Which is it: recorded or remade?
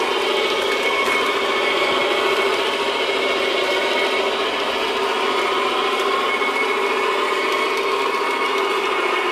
recorded